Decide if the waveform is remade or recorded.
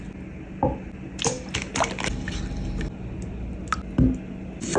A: recorded